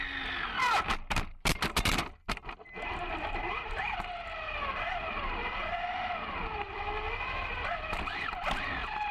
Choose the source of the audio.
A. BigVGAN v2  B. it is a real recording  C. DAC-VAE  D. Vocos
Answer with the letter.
B